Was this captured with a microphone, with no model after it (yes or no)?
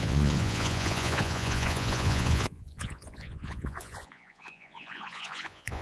no